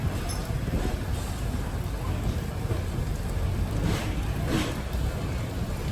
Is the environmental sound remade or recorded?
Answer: recorded